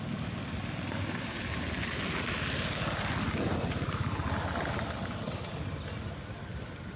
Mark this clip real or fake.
real